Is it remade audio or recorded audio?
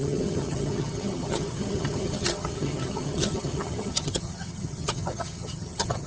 remade